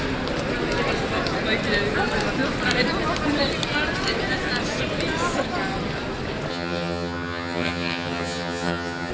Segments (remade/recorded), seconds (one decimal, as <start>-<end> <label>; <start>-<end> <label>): 0.0-6.5 recorded; 6.5-9.1 remade